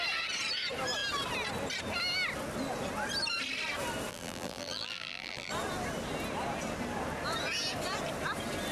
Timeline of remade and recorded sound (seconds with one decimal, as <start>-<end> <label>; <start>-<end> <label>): 0.0-4.1 recorded; 4.1-5.5 remade; 5.5-8.7 recorded